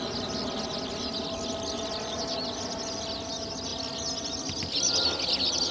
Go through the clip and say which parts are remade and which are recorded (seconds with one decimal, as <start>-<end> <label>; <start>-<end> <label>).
0.0-5.7 recorded